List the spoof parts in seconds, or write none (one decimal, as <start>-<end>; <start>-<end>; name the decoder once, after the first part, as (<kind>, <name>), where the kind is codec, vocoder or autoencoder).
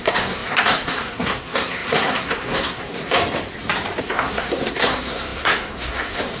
0.0-3.2 (codec, SNAC); 4.0-6.4